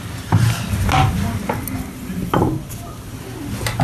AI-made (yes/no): no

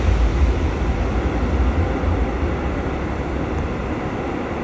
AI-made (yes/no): no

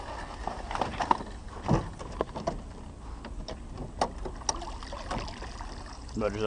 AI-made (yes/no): no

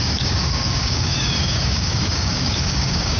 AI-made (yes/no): yes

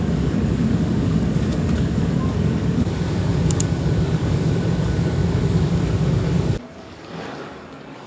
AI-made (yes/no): yes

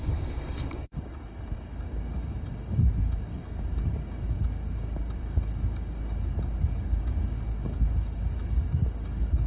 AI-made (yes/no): yes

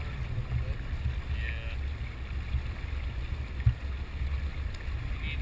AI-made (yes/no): no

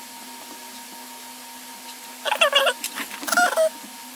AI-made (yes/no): no